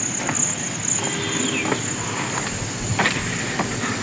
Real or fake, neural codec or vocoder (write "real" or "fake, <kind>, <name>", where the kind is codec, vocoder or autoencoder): real